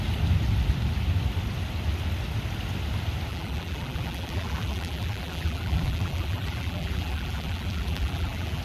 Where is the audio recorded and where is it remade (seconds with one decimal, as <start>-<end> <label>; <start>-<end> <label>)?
0.0-3.3 recorded; 3.3-8.6 remade